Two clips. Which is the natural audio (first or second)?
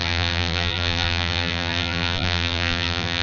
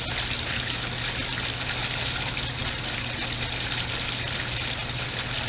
second